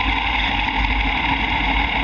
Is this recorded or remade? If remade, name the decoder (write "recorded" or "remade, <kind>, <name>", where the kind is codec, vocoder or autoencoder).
recorded